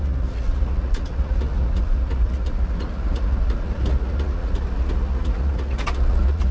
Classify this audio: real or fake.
fake